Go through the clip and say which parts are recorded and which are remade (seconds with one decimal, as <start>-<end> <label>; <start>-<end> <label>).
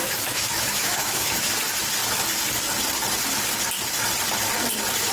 0.0-1.5 remade; 1.5-5.1 recorded